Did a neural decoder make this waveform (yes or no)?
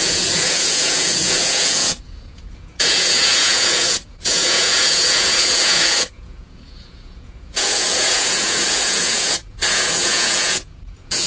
yes